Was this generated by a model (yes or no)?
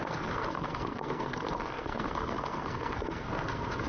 yes